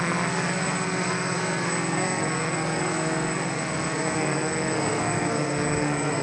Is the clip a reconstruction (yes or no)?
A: yes